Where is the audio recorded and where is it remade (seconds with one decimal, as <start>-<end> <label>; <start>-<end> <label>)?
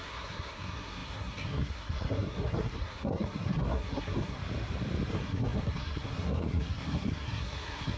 0.0-4.4 remade; 4.4-5.1 recorded; 5.1-8.0 remade